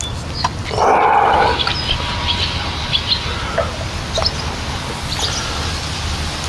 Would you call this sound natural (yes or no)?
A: yes